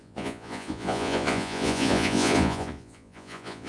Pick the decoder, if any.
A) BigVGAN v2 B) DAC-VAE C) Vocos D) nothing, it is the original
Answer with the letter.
C